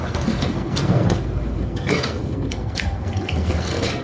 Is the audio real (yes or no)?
no